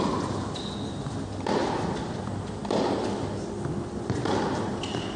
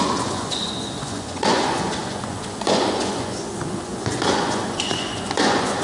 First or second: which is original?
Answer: first